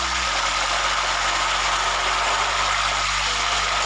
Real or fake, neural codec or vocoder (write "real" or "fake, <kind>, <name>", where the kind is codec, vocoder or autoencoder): real